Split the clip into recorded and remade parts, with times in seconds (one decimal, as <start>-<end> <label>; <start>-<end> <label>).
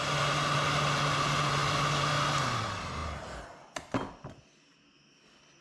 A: 0.0-5.6 recorded